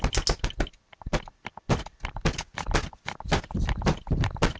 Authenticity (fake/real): real